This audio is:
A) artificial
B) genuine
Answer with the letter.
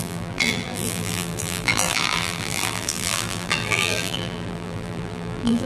A